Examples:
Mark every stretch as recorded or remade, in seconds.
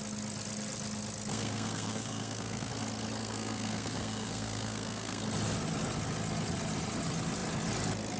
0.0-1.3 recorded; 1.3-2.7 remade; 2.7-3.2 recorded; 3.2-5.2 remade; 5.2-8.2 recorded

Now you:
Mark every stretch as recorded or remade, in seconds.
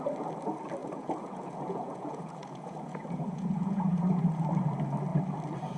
0.0-0.8 recorded; 0.8-4.3 remade; 4.3-5.8 recorded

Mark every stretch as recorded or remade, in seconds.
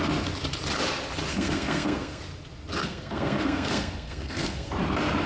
0.0-1.3 recorded; 1.3-2.2 remade; 2.2-2.8 recorded; 2.8-4.7 remade; 4.7-5.3 recorded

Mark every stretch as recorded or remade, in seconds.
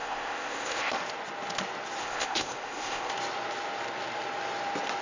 0.0-1.0 remade; 1.0-2.0 recorded; 2.0-3.1 remade; 3.1-5.0 recorded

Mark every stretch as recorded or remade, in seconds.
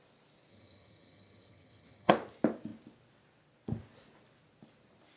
0.0-0.5 recorded; 0.5-2.1 remade; 2.1-5.2 recorded